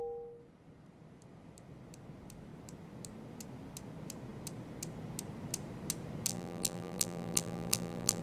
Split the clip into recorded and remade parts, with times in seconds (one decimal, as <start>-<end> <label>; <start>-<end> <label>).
0.0-6.3 recorded; 6.3-8.2 remade